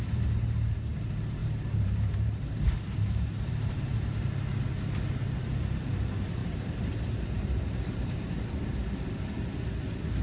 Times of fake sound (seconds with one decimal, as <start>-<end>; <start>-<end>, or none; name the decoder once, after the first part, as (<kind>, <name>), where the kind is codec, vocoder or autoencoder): 1.4-4.3 (vocoder, BigVGAN v2); 6.4-8.6